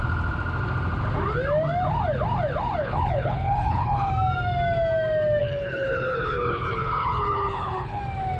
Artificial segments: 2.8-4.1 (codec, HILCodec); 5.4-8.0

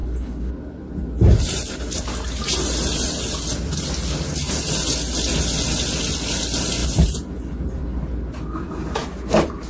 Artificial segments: 0.0-0.5 (codec, HILCodec)